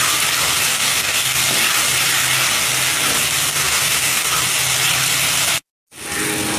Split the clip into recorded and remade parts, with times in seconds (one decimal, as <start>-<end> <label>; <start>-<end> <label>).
0.0-0.7 recorded; 0.7-1.4 remade; 1.4-3.5 recorded; 3.5-4.3 remade; 4.3-6.6 recorded